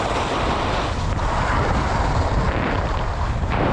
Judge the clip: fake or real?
real